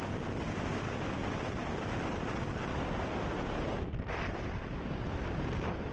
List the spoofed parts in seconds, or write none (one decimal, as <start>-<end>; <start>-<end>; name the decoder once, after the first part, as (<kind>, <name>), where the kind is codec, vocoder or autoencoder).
none